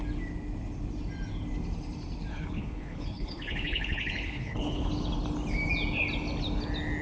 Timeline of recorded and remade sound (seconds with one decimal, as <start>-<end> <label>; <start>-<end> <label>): 0.0-2.3 recorded; 2.3-4.9 remade; 4.9-7.0 recorded

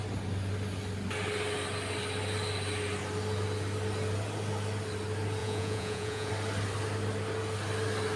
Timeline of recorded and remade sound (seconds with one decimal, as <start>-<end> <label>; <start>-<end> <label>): 0.0-5.4 recorded; 5.4-6.3 remade; 6.3-8.2 recorded

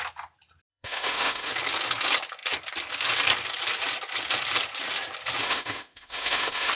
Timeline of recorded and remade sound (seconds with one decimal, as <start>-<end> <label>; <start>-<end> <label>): 0.0-0.7 recorded; 0.7-1.5 remade; 1.5-5.4 recorded; 5.4-6.7 remade

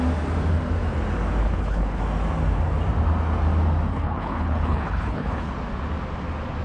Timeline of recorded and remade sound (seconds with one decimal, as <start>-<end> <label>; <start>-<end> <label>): 0.0-1.4 recorded; 1.4-2.0 remade; 2.0-3.9 recorded; 3.9-5.5 remade; 5.5-6.6 recorded

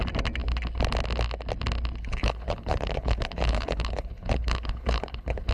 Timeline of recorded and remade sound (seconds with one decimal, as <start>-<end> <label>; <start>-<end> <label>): 0.0-2.0 recorded; 2.0-5.5 remade